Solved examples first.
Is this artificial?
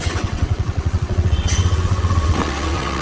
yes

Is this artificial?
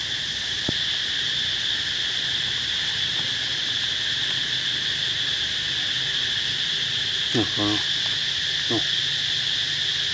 no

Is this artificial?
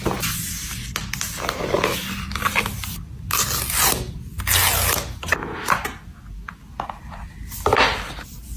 no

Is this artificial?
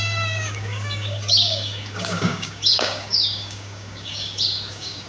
yes